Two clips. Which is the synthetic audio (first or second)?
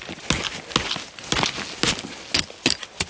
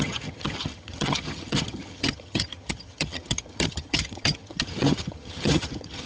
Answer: second